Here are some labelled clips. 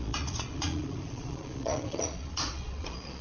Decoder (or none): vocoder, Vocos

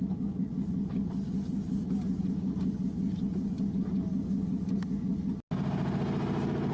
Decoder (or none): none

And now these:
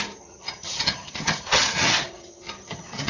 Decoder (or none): vocoder, HiFi-GAN